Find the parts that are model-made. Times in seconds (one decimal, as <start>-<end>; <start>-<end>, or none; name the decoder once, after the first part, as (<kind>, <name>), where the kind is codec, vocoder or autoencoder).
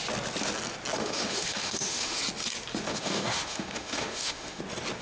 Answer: 1.0-2.2 (autoencoder, DAC-VAE); 2.9-4.6